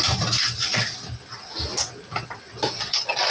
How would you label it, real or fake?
real